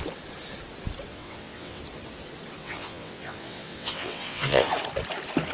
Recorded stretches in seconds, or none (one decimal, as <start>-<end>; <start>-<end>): 0.0-1.1; 1.8-2.6; 4.7-5.5